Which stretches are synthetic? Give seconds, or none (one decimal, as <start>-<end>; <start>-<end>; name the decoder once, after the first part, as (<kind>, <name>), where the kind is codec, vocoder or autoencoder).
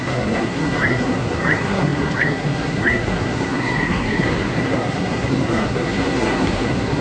0.0-7.0 (codec, SNAC)